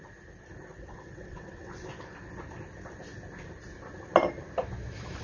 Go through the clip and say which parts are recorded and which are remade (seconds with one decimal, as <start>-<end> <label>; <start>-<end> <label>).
0.0-0.8 recorded; 0.8-1.9 remade; 1.9-5.2 recorded

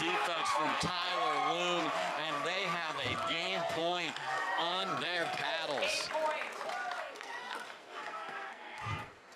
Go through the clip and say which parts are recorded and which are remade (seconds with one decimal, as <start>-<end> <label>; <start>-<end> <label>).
0.0-1.1 remade; 1.1-1.8 recorded; 1.8-5.5 remade; 5.5-7.0 recorded; 7.0-9.4 remade

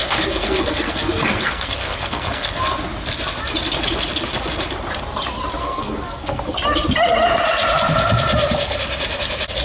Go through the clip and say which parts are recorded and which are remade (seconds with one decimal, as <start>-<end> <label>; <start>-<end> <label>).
0.0-2.6 remade; 2.6-5.6 recorded; 5.6-6.4 remade; 6.4-9.6 recorded

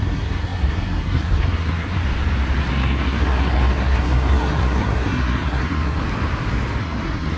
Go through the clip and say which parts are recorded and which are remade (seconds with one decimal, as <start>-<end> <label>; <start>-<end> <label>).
0.0-2.0 remade; 2.0-2.7 recorded; 2.7-6.0 remade; 6.0-6.8 recorded; 6.8-7.4 remade